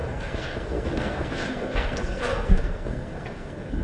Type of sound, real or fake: fake